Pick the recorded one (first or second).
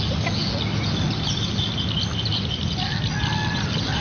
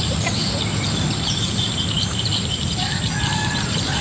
first